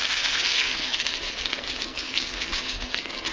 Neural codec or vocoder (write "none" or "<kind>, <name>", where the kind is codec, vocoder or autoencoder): codec, SNAC